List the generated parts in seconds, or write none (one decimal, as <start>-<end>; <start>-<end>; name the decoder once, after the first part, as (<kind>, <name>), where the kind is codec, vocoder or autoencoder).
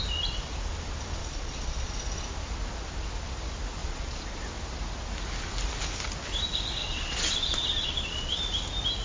1.2-1.9 (vocoder, Vocos); 3.8-4.4; 6.8-8.4